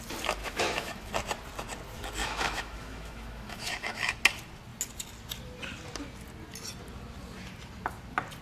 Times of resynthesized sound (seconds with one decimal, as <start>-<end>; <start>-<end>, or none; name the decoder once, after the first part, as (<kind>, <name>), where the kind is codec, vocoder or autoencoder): 0.4-1.1 (autoencoder, DAC-VAE); 2.2-4.1